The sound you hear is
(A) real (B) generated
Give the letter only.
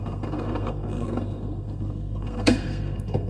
B